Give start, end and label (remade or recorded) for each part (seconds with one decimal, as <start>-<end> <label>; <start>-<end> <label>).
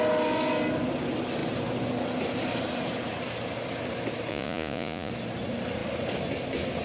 0.0-4.3 recorded; 4.3-5.1 remade; 5.1-6.8 recorded